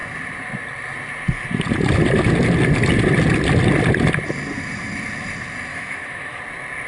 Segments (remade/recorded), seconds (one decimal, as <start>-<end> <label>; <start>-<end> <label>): 0.0-5.7 recorded; 5.7-6.4 remade; 6.4-6.9 recorded